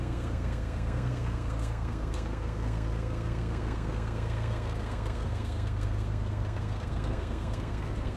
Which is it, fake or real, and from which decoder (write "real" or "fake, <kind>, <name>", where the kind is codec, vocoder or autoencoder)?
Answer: fake, codec, SNAC